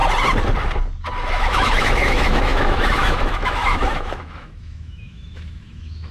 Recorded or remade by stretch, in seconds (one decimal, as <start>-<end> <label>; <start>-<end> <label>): 0.0-1.3 recorded; 1.3-6.1 remade